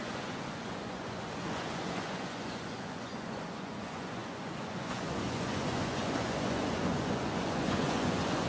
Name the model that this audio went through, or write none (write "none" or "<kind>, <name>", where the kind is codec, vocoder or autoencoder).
vocoder, Vocos